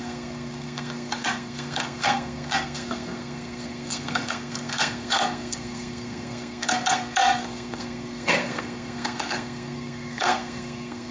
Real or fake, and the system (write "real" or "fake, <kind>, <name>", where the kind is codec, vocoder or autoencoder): fake, codec, SNAC